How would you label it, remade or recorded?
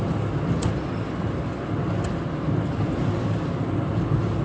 recorded